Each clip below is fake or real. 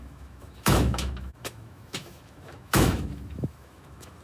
fake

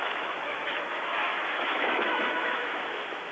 fake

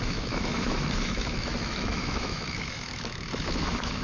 fake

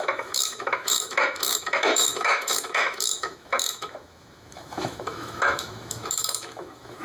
fake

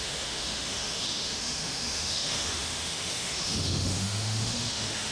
fake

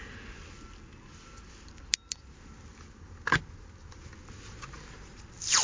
real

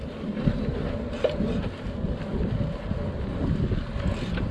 real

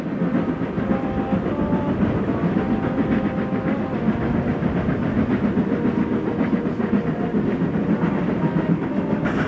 real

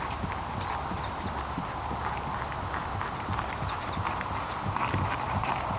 real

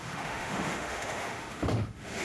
fake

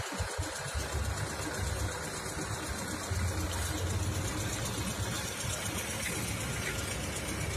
real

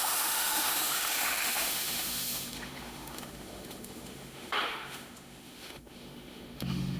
fake